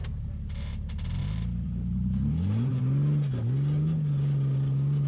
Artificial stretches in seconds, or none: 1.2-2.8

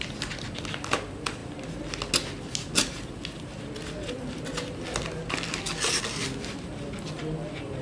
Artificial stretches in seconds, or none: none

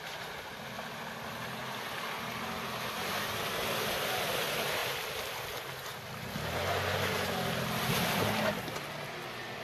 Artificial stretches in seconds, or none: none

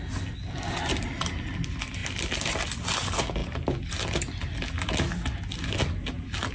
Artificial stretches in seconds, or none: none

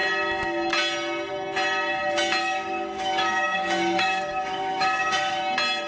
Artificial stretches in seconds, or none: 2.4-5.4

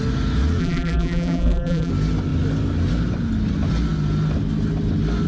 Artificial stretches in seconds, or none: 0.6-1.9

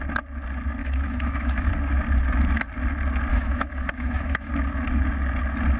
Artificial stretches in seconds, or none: 0.8-1.7; 3.3-4.5

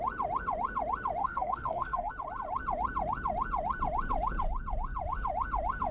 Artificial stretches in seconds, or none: 1.2-2.1